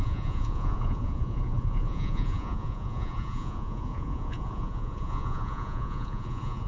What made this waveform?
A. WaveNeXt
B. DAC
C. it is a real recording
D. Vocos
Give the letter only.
D